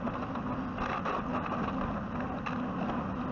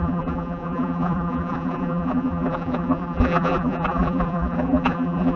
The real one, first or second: first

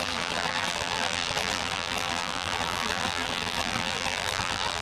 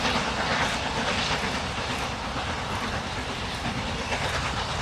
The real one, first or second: second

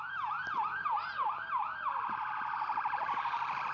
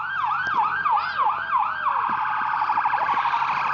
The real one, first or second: second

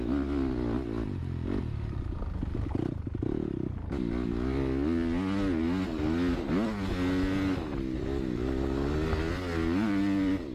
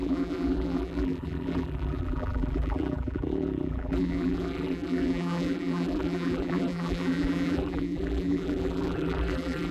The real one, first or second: first